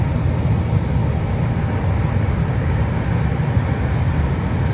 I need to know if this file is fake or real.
real